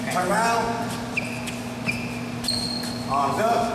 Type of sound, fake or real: real